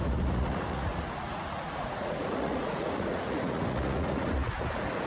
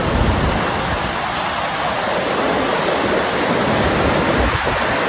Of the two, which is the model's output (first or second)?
first